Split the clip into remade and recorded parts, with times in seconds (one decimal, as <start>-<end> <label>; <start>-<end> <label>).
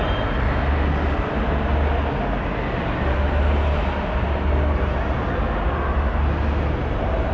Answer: 0.0-7.3 recorded